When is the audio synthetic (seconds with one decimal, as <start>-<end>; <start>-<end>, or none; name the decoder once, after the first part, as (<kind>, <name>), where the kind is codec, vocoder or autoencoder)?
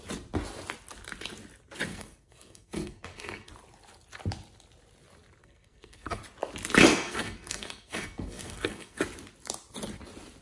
1.9-3.5 (codec, SNAC); 5.4-6.2; 6.9-9.0